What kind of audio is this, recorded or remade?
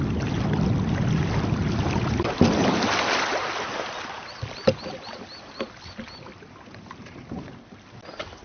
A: recorded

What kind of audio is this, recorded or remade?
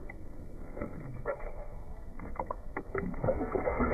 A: remade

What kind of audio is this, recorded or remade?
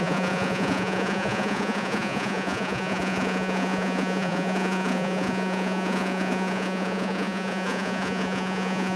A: remade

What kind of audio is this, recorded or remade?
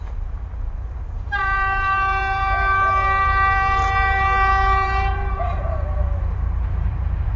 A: remade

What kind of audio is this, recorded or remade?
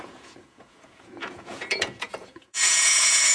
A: remade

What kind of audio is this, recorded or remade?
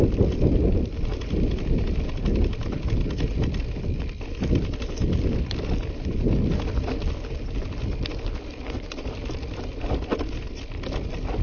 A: recorded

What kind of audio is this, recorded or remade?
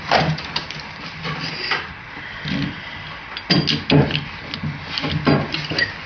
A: recorded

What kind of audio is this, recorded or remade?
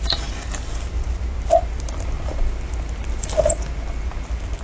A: recorded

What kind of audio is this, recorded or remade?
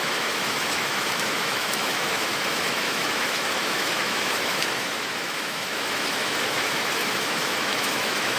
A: remade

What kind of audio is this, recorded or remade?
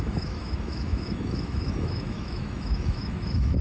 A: remade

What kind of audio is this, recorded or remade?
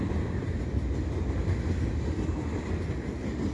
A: recorded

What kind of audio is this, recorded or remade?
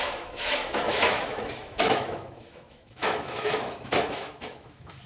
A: remade